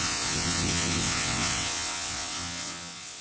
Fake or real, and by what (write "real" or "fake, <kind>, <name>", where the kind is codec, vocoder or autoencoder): fake, vocoder, WaveNeXt